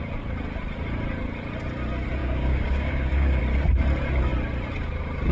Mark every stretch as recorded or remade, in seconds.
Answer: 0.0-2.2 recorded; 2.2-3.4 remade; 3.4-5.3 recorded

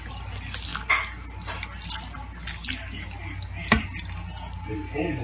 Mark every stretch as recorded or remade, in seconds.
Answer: 0.0-5.2 recorded

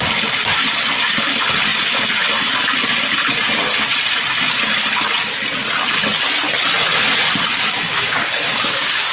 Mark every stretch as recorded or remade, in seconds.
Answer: 0.0-7.5 recorded; 7.5-9.1 remade

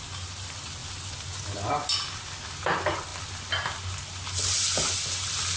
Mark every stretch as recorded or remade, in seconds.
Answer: 0.0-5.6 recorded

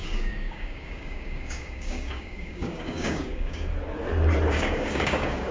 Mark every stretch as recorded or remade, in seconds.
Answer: 0.0-3.7 remade; 3.7-4.5 recorded; 4.5-5.5 remade

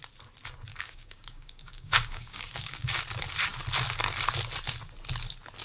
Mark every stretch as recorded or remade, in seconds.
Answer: 0.0-0.7 recorded; 0.7-3.0 remade; 3.0-5.6 recorded

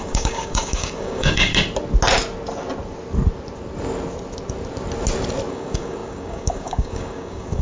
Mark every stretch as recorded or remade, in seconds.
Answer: 0.0-1.5 remade; 1.5-5.5 recorded; 5.5-7.6 remade

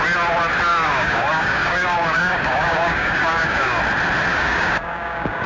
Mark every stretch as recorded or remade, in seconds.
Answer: 0.0-0.7 recorded; 0.7-3.8 remade; 3.8-4.3 recorded; 4.3-5.5 remade